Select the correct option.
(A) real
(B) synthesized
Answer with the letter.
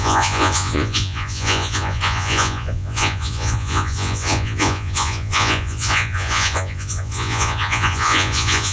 B